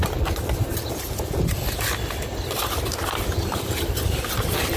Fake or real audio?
real